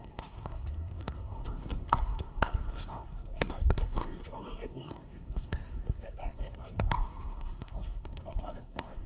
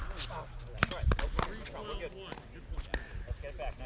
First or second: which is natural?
second